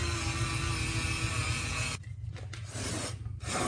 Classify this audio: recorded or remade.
recorded